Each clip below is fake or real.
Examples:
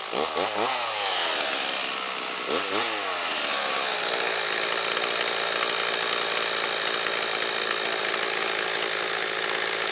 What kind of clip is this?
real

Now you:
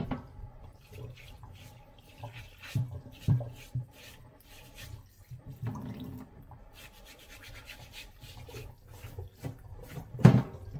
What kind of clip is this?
fake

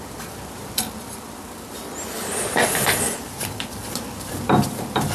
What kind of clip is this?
fake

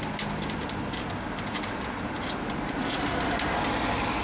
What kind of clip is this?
real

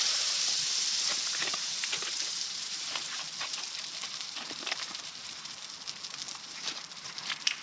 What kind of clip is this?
fake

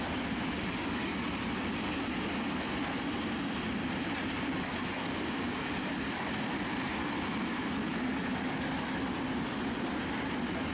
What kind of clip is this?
real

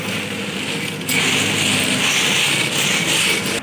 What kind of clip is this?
real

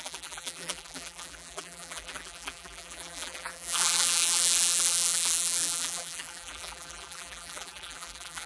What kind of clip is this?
fake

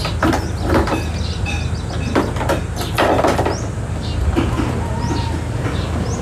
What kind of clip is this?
real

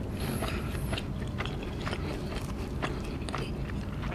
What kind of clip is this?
real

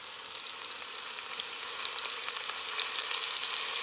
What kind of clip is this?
real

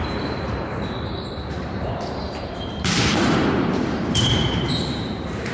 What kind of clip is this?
fake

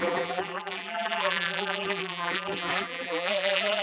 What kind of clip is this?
fake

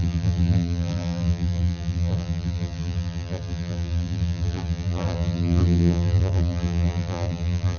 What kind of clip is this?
fake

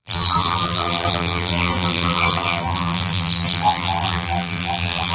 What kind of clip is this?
fake